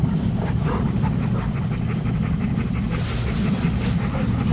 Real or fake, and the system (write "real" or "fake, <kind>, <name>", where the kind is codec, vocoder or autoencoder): real